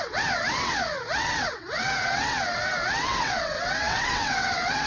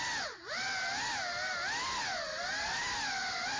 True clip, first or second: second